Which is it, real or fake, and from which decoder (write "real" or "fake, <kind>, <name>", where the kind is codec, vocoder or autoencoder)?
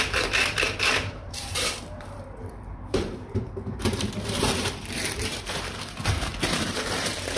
fake, vocoder, BigVGAN v2